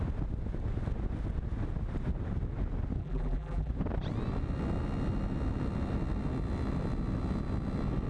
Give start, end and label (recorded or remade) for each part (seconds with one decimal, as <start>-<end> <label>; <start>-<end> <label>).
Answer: 0.0-3.0 recorded; 3.0-3.7 remade; 3.7-8.1 recorded